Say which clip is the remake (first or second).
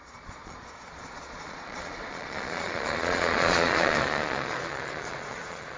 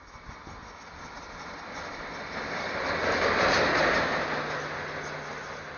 first